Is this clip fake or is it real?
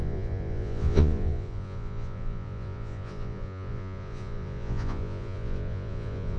fake